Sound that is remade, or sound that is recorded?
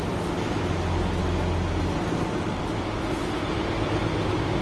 recorded